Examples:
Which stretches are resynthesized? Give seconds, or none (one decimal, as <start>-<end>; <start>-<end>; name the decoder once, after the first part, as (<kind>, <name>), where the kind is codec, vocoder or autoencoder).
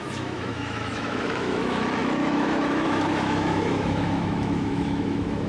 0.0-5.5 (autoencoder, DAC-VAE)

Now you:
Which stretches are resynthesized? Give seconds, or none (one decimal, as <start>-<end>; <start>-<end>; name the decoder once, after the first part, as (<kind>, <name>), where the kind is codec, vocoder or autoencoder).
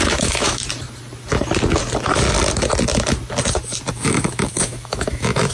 0.0-0.6 (autoencoder, DAC-VAE); 3.9-5.5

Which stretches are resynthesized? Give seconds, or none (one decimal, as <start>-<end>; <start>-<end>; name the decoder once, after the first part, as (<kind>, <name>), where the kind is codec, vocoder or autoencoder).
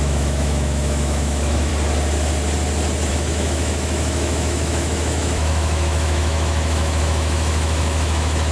0.0-1.7 (autoencoder, DAC-VAE); 3.1-8.5